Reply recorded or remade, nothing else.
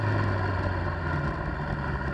recorded